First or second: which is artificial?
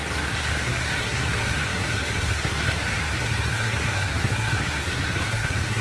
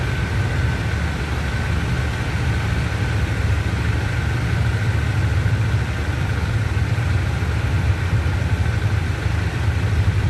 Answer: first